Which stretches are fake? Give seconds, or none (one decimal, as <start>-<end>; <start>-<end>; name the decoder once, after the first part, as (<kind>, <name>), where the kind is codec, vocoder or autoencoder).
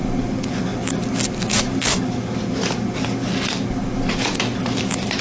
none